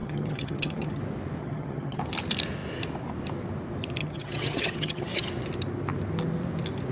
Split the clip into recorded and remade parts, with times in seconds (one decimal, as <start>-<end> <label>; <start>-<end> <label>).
0.0-1.0 remade; 1.0-1.4 recorded; 1.4-2.0 remade; 2.0-4.0 recorded; 4.0-5.3 remade; 5.3-6.9 recorded